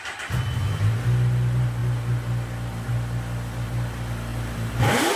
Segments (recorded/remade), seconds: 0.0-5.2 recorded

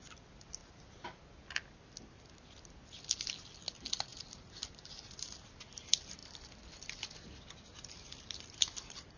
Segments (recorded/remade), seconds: 0.0-0.6 recorded; 0.6-1.2 remade; 1.2-4.1 recorded; 4.1-4.9 remade; 4.9-9.2 recorded

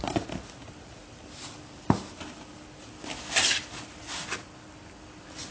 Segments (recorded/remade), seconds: 0.0-5.5 recorded

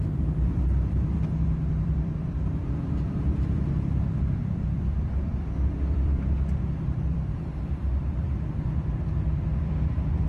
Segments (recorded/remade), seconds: 0.0-10.3 remade